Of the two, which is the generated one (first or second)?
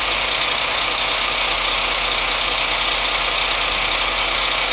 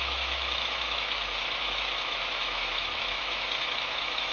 second